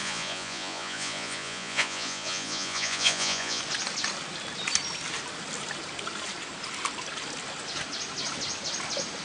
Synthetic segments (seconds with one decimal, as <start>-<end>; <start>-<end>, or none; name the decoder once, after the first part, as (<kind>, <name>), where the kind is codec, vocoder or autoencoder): 0.0-3.6 (vocoder, Vocos)